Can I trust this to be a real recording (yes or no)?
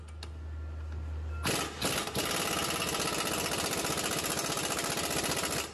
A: yes